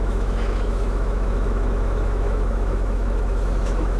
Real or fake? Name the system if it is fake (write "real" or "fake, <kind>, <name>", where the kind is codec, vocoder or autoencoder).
fake, autoencoder, DAC-VAE